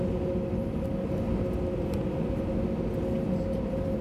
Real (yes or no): yes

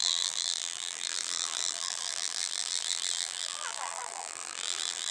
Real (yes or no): no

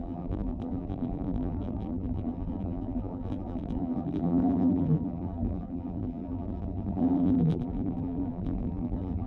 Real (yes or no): no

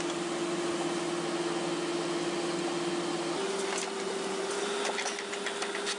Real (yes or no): yes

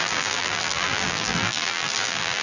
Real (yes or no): no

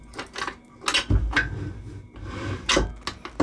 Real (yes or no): yes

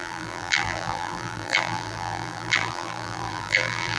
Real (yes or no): no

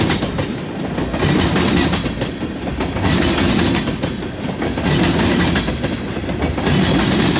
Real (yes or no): yes